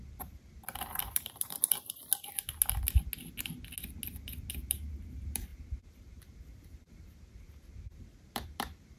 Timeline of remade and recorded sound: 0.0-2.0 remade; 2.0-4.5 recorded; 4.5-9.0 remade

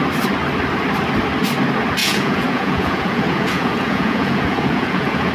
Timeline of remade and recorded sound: 0.0-2.0 recorded; 2.0-5.3 remade

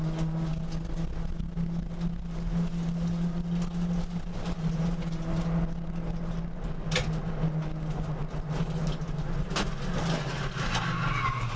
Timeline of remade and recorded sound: 0.0-11.6 recorded